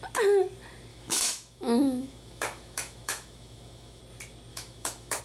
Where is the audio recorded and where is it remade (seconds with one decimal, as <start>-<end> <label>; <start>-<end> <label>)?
0.0-0.9 recorded; 0.9-4.0 remade; 4.0-4.5 recorded; 4.5-5.2 remade